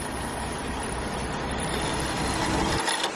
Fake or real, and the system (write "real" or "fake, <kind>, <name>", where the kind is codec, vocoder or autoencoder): real